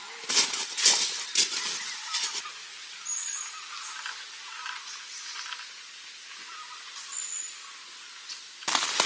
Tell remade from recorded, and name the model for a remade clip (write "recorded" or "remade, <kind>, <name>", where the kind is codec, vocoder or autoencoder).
recorded